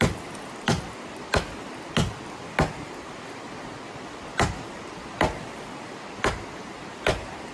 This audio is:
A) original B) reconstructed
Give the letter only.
A